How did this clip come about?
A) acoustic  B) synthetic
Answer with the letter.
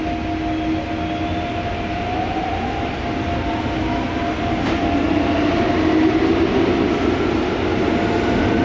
A